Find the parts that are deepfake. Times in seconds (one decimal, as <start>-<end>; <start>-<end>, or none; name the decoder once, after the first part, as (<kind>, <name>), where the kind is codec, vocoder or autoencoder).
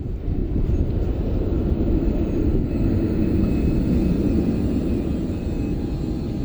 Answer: 0.4-0.9 (vocoder, BigVGAN v2); 4.8-5.4